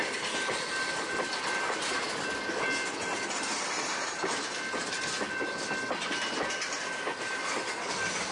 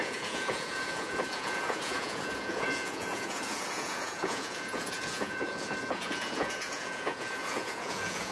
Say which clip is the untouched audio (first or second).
first